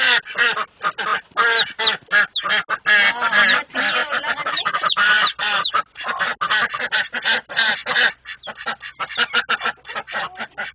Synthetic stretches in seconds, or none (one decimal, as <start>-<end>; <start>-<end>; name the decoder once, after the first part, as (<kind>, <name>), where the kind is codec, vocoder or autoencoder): 4.0-5.4 (vocoder, BigVGAN v2)